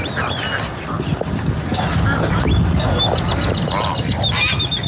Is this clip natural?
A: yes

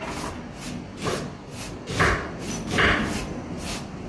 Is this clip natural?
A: yes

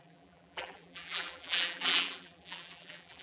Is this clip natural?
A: no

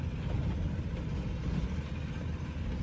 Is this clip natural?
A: yes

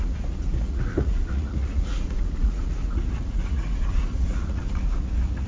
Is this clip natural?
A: no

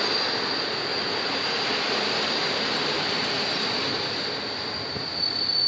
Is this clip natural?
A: yes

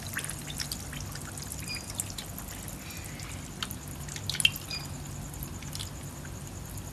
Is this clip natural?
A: yes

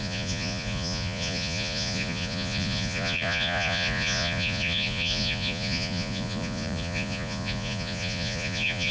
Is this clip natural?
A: no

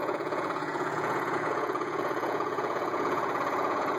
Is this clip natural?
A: no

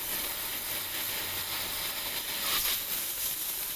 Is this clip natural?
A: yes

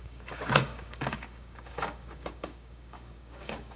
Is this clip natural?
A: no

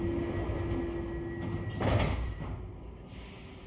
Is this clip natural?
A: yes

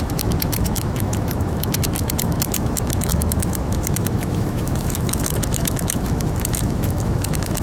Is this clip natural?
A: no